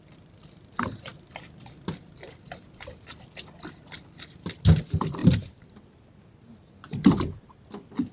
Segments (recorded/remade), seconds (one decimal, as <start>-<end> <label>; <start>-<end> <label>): 0.0-5.2 recorded; 5.2-5.8 remade; 5.8-8.1 recorded